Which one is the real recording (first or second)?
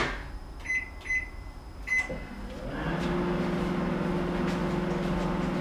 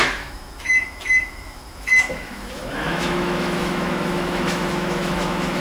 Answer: first